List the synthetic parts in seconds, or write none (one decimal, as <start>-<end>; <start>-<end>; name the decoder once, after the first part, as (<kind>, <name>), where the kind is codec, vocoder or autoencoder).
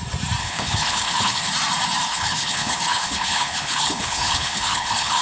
0.4-1.5 (codec, HILCodec); 2.1-5.2